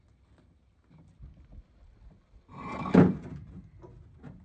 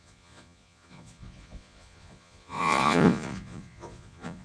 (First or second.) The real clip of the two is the first